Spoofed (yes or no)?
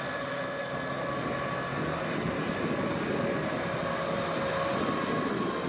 no